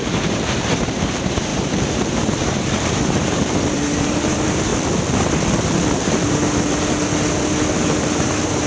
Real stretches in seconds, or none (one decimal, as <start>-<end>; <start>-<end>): 4.7-7.7